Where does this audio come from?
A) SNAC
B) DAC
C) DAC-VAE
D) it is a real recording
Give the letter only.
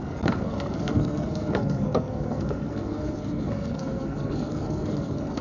A